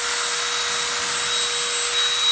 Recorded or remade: recorded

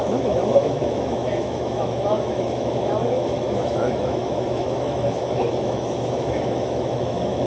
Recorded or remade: remade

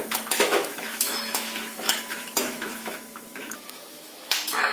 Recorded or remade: remade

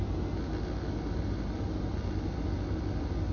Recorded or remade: recorded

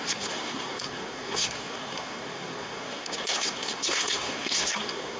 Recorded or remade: remade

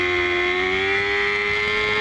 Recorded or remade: recorded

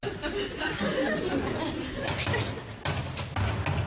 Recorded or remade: recorded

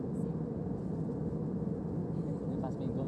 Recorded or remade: recorded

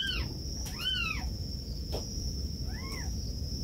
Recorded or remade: recorded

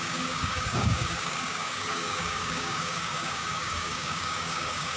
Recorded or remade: remade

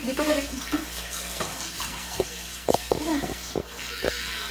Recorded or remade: remade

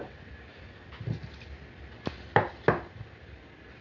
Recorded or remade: recorded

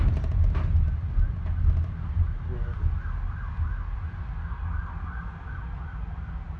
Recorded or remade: recorded